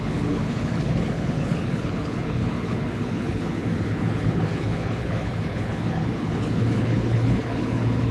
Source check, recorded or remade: remade